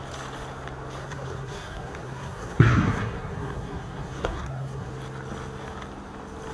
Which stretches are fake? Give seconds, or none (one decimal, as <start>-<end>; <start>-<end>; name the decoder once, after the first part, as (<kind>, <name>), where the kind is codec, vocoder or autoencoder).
1.0-4.9 (codec, SNAC)